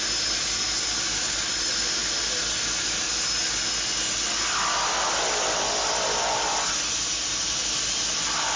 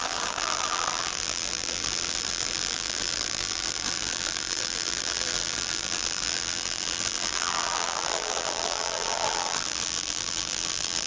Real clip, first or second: first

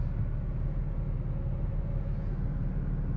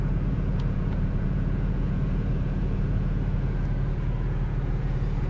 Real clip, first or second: first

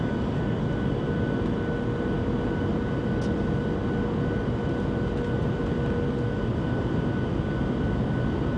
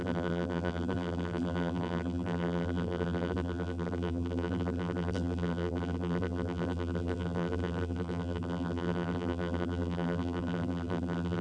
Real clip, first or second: first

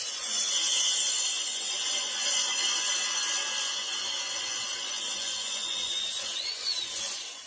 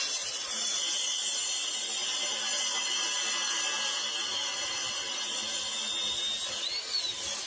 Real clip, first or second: second